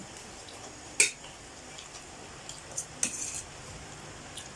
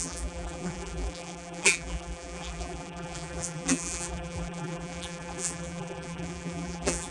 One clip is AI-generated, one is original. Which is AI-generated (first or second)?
second